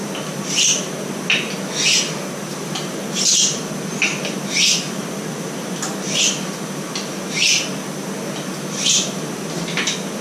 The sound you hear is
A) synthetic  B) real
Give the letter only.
B